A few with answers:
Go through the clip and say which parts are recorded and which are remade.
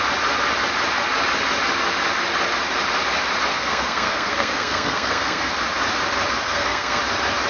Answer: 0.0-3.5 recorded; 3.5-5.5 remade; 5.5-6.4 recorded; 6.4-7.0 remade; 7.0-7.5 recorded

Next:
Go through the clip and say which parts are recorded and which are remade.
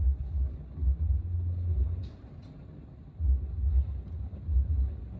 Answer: 0.0-2.0 recorded; 2.0-2.5 remade; 2.5-5.2 recorded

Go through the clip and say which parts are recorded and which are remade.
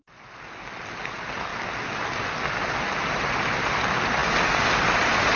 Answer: 0.0-5.4 recorded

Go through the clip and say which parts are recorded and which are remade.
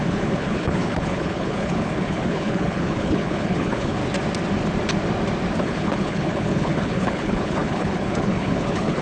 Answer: 0.0-4.0 remade; 4.0-5.6 recorded; 5.6-9.0 remade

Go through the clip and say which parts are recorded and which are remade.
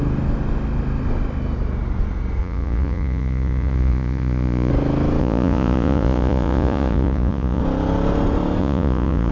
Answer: 0.0-2.4 recorded; 2.4-4.7 remade; 4.7-5.2 recorded; 5.2-7.6 remade; 7.6-8.6 recorded; 8.6-9.3 remade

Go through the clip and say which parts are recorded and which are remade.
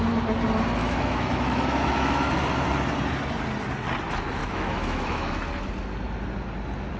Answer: 0.0-0.8 recorded; 0.8-2.3 remade; 2.3-4.4 recorded; 4.4-5.4 remade; 5.4-7.0 recorded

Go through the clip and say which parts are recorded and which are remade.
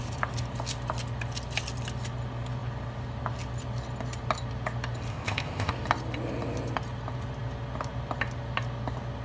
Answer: 0.0-5.1 recorded; 5.1-5.7 remade; 5.7-9.2 recorded